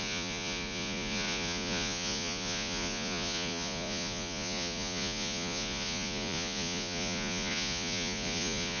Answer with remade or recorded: remade